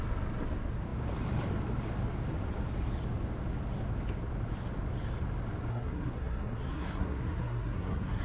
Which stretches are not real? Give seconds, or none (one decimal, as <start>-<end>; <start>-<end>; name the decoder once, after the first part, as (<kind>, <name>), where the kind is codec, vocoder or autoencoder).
5.7-8.2 (codec, SNAC)